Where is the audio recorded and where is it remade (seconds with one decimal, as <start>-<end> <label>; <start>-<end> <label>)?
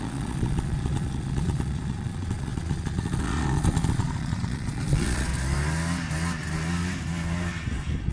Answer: 0.0-5.3 remade; 5.3-8.1 recorded